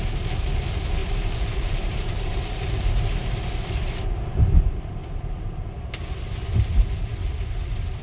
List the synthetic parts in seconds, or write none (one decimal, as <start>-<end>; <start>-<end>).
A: 1.0-2.7; 6.5-7.4